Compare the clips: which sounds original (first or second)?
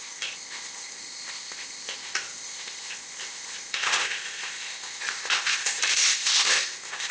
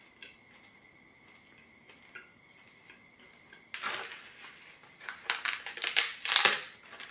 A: second